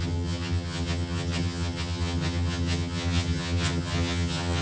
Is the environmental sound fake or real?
fake